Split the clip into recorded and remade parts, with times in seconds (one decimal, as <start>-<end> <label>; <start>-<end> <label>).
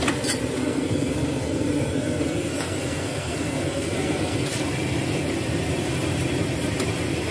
0.0-0.6 recorded; 0.6-4.5 remade; 4.5-7.3 recorded